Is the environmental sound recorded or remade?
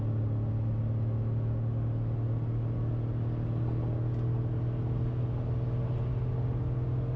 recorded